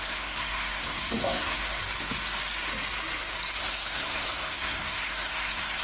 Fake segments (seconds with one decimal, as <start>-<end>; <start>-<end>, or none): 0.0-1.8; 3.6-5.8